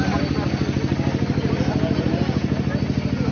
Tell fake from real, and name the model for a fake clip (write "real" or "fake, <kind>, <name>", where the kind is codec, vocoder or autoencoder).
real